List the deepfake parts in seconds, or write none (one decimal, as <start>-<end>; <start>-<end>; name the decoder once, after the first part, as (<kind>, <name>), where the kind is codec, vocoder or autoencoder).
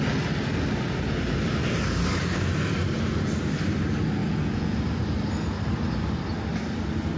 4.2-4.8 (vocoder, Vocos)